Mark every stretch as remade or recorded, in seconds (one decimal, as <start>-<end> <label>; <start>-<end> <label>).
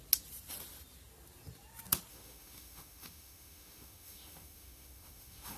0.0-2.1 recorded; 2.1-5.6 remade